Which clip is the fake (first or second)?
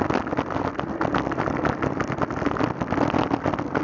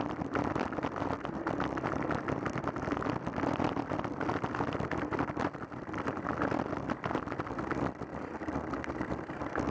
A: second